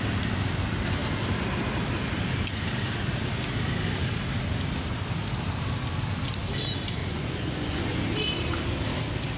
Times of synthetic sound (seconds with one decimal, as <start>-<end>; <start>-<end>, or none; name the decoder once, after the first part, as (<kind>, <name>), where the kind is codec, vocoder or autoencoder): 7.0-8.0 (vocoder, Vocos)